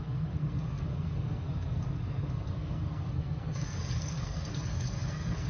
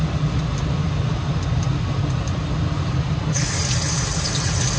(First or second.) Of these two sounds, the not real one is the first